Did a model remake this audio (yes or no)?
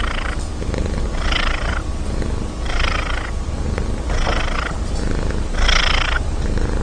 yes